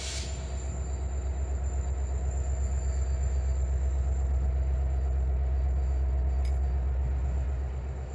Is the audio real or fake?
real